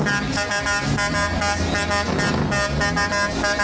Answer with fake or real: real